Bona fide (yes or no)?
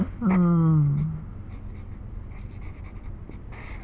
yes